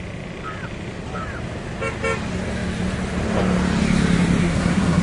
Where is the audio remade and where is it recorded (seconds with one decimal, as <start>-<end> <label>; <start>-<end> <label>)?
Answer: 0.0-4.4 recorded; 4.4-5.0 remade